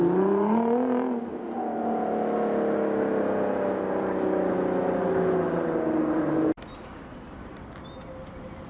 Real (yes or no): yes